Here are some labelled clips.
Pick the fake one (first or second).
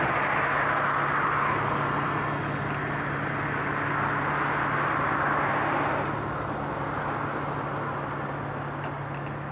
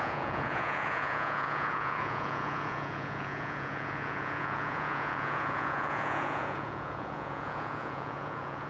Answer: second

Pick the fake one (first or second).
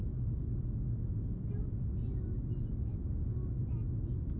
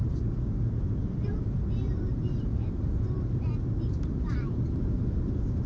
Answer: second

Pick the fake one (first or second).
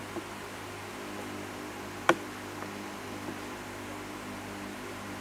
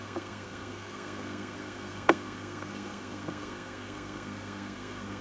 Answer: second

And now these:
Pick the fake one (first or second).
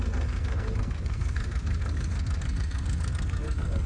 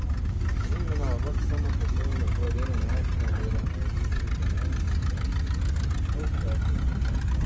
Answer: first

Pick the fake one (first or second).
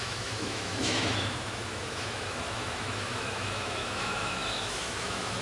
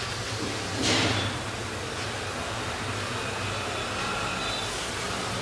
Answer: first